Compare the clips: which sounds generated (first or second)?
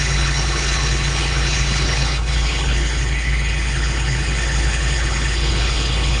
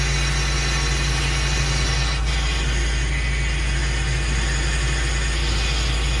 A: first